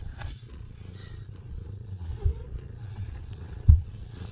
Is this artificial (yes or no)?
yes